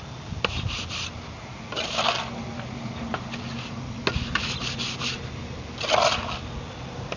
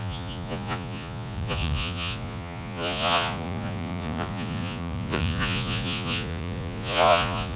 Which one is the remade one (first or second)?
second